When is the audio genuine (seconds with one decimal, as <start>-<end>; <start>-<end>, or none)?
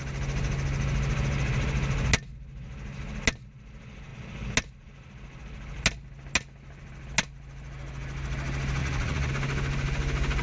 0.0-8.8; 9.3-10.4